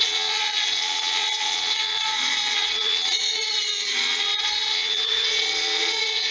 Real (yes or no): no